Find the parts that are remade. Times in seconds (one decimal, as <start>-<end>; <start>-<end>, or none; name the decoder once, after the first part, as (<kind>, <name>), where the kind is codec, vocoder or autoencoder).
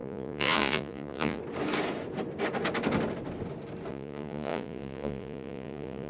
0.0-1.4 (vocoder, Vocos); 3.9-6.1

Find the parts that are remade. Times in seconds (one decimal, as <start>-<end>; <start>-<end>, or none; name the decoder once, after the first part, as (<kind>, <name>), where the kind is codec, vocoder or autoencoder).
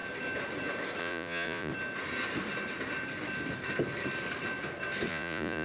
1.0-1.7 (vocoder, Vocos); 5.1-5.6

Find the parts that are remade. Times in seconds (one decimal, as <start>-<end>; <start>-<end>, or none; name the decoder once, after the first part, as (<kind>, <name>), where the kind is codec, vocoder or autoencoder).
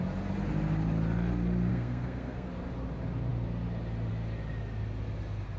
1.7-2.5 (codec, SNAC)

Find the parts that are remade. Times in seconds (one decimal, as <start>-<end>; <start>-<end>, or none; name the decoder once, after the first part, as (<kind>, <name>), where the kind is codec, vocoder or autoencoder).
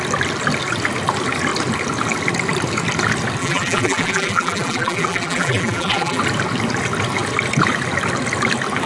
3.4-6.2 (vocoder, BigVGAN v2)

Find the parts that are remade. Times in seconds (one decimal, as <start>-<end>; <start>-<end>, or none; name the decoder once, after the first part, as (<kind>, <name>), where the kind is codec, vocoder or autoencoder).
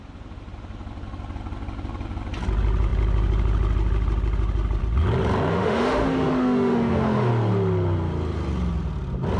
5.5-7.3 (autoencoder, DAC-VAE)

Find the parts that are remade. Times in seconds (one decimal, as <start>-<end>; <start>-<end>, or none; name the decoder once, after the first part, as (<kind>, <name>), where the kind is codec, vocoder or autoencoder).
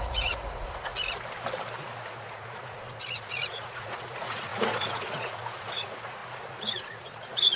0.0-0.9 (vocoder, Vocos); 1.8-7.6